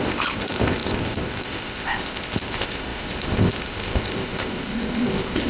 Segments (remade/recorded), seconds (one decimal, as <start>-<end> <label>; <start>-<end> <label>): 0.0-5.5 remade